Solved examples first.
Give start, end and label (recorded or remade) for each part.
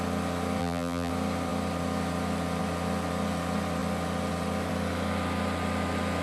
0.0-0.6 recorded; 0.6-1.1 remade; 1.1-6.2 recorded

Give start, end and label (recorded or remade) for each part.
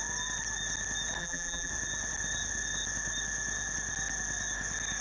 0.0-1.2 recorded; 1.2-1.7 remade; 1.7-5.0 recorded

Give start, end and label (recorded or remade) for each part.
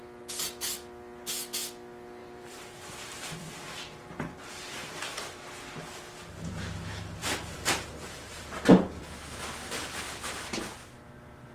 0.0-2.2 recorded; 2.2-4.9 remade; 4.9-7.2 recorded; 7.2-8.4 remade; 8.4-11.5 recorded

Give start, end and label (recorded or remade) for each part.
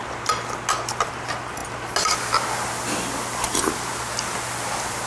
0.0-5.1 recorded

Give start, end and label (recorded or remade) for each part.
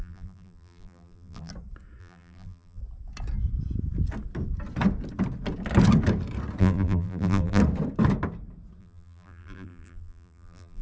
0.0-1.5 remade; 1.5-2.0 recorded; 2.0-2.8 remade; 2.8-6.6 recorded; 6.6-7.6 remade; 7.6-8.8 recorded; 8.8-10.8 remade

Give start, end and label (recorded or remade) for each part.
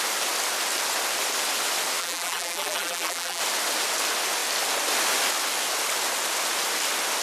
0.0-2.0 recorded; 2.0-3.4 remade; 3.4-7.2 recorded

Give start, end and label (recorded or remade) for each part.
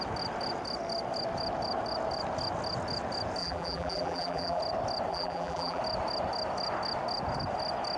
0.0-3.4 recorded; 3.4-4.6 remade; 4.6-5.1 recorded; 5.1-5.8 remade; 5.8-8.0 recorded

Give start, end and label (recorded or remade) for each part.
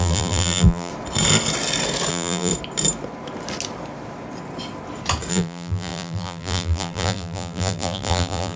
0.0-0.9 remade; 0.9-2.1 recorded; 2.1-2.5 remade; 2.5-5.3 recorded; 5.3-8.6 remade